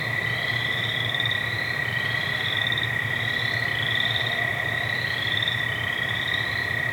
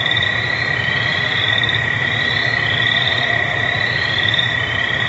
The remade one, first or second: second